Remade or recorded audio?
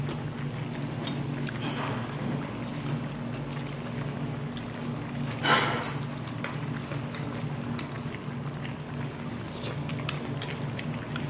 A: recorded